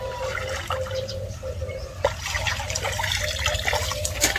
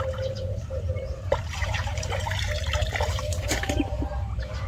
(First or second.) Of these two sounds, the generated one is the second